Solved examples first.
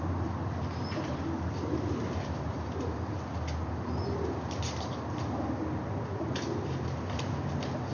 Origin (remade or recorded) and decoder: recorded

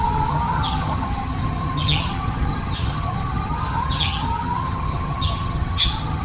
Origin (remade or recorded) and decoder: remade, vocoder, HiFi-GAN